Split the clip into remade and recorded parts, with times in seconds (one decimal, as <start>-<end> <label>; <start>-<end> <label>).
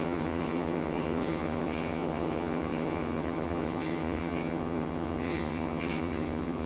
0.0-6.7 remade